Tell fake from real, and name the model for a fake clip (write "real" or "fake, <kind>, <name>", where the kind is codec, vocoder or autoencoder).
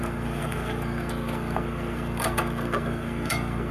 fake, codec, SNAC